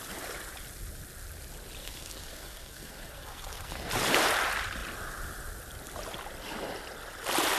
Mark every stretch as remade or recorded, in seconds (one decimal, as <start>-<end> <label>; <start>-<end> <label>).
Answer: 0.0-1.8 recorded; 1.8-3.9 remade; 3.9-7.6 recorded